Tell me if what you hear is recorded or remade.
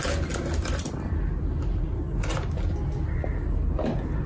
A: recorded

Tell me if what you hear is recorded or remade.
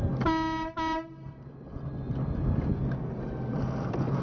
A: recorded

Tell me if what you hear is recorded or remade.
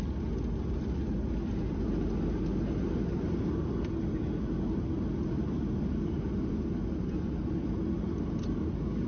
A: recorded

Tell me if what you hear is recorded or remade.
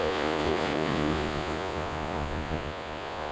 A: remade